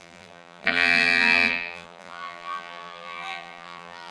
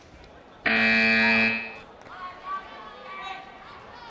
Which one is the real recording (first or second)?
second